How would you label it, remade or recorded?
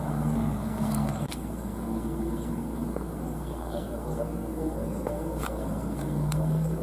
remade